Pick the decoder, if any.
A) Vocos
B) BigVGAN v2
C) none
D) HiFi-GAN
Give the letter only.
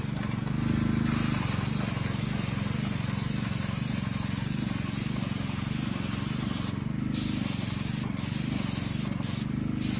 C